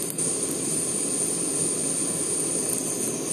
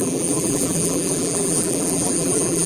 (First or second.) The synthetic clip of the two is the second